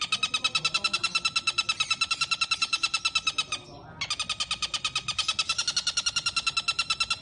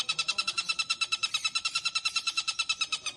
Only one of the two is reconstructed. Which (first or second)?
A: second